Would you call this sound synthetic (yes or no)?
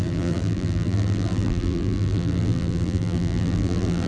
yes